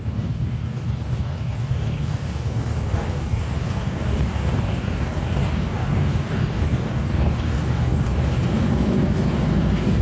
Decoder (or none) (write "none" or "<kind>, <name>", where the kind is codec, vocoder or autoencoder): codec, DAC